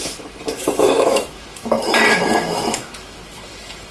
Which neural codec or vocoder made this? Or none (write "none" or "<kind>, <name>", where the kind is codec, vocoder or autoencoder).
autoencoder, DAC-VAE